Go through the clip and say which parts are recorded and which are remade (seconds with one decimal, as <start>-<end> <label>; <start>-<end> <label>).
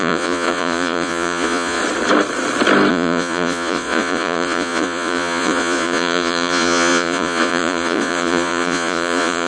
0.0-1.8 remade; 1.8-2.9 recorded; 2.9-9.5 remade